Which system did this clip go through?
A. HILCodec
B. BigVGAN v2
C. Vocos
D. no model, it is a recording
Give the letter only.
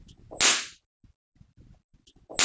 D